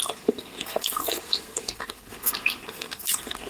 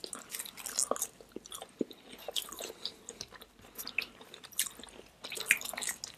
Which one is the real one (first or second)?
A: second